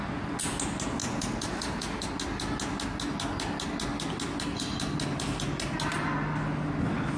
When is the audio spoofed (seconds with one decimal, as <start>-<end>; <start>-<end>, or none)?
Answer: 1.0-2.1